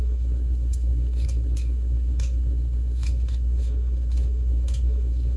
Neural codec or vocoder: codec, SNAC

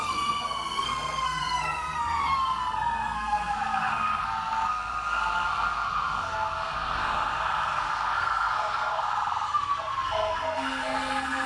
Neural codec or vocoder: codec, SNAC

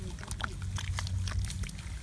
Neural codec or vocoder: none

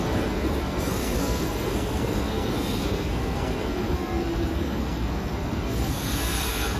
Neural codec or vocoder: codec, SNAC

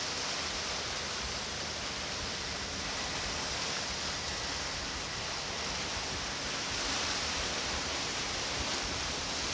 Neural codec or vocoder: none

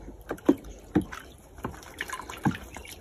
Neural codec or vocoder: none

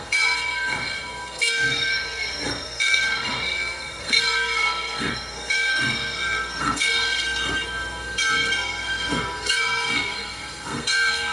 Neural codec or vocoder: codec, SNAC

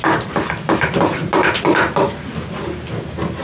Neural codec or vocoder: none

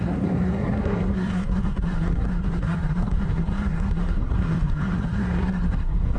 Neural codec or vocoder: codec, SNAC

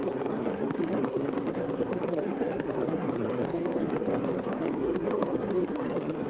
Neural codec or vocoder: codec, SNAC